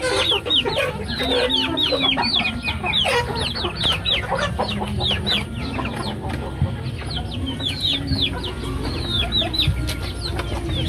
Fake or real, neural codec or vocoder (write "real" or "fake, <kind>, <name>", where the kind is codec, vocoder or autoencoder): real